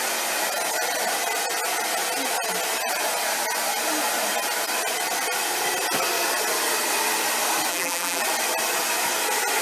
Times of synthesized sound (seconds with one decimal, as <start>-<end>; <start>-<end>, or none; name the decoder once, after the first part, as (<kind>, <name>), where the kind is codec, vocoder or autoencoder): 7.7-8.2 (vocoder, BigVGAN v2)